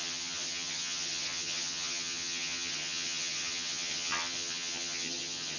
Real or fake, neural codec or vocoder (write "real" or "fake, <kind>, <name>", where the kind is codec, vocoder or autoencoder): fake, vocoder, HiFi-GAN